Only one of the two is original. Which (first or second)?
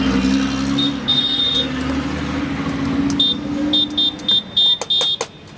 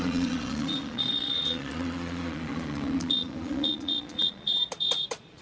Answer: first